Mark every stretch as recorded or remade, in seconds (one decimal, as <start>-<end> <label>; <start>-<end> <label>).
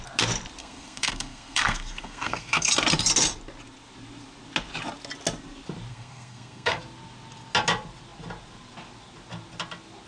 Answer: 0.0-0.6 recorded; 0.6-2.7 remade; 2.7-5.9 recorded; 5.9-6.8 remade; 6.8-10.1 recorded